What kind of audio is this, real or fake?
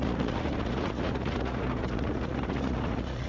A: fake